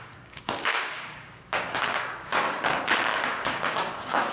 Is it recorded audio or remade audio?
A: remade